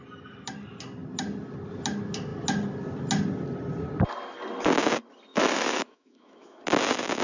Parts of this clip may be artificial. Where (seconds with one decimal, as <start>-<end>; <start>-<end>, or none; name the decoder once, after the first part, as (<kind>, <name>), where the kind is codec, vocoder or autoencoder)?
5.3-6.6 (autoencoder, DAC-VAE)